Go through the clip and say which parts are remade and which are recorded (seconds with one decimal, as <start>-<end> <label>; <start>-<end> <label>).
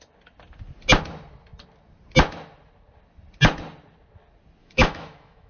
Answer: 0.0-4.6 recorded; 4.6-5.5 remade